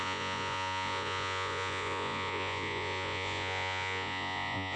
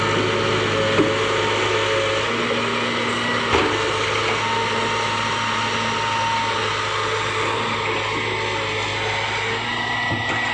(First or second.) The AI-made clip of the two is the first